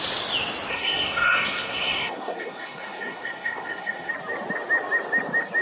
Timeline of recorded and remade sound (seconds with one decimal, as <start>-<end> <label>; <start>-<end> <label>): 0.0-0.7 recorded; 0.7-4.1 remade; 4.1-5.6 recorded